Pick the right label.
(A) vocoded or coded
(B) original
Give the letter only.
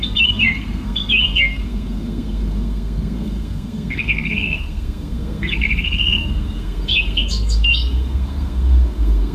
A